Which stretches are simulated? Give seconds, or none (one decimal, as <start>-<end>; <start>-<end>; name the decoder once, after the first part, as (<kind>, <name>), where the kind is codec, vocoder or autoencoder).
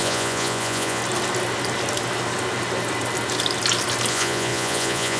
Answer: 0.0-1.0 (vocoder, Vocos); 4.1-5.2